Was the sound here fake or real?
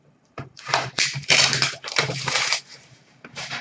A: fake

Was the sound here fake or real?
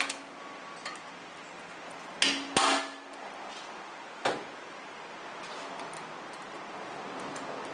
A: real